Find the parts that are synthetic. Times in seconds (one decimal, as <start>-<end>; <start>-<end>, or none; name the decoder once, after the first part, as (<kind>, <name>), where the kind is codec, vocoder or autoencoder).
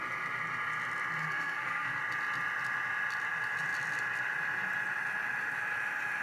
1.2-2.0 (codec, SNAC)